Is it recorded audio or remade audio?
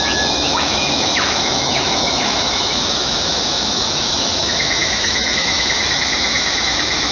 remade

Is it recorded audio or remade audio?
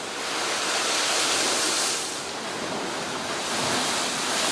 recorded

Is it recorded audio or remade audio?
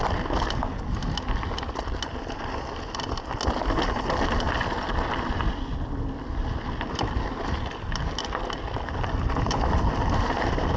recorded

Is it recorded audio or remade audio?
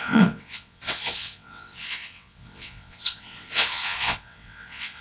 remade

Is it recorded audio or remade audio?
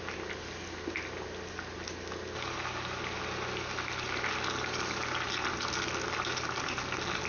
recorded